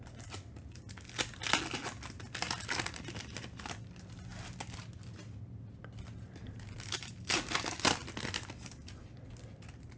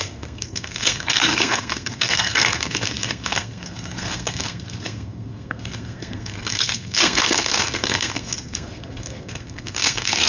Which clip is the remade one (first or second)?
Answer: second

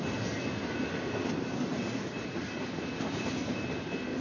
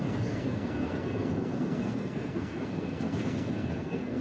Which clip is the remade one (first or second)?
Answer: second